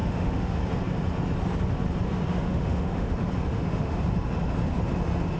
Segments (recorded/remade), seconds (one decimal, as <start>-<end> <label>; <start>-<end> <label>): 0.0-0.6 remade; 0.6-2.3 recorded; 2.3-3.1 remade; 3.1-3.5 recorded; 3.5-4.0 remade; 4.0-5.4 recorded